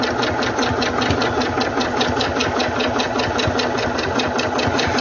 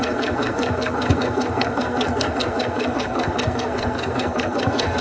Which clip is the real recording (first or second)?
first